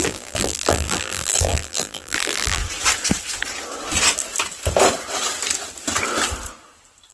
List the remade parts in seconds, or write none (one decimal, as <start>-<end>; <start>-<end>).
0.0-2.6